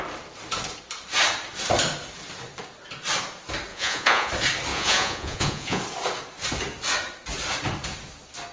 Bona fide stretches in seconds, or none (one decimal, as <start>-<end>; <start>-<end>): 0.0-3.7; 4.3-4.7; 5.8-8.5